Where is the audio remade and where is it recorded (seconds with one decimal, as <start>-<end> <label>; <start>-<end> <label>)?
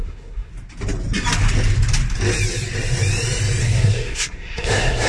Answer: 0.0-0.5 remade; 0.5-3.6 recorded; 3.6-5.1 remade